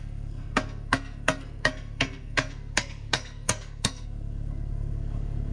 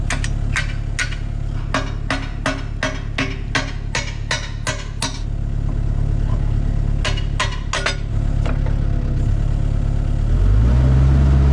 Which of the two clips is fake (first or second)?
first